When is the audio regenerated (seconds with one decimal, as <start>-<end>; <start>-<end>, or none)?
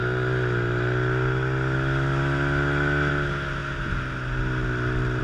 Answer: none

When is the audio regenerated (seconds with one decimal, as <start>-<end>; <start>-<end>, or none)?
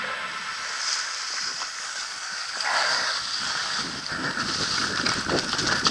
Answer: 1.5-4.1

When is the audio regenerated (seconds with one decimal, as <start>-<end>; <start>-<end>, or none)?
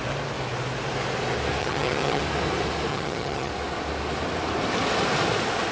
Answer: 1.6-2.2; 2.9-3.5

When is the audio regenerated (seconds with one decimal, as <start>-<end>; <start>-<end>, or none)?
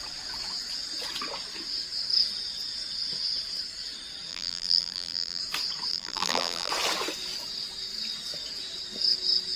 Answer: 4.3-5.4; 5.9-6.7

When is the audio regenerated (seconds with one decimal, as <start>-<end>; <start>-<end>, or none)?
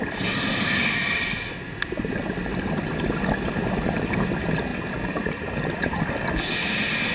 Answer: none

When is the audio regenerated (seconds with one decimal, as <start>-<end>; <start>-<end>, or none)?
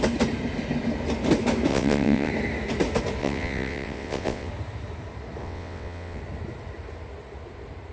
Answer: 1.7-2.3; 3.2-4.5; 5.4-6.2